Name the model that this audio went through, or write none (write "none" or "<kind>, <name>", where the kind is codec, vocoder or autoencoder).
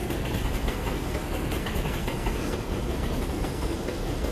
codec, SNAC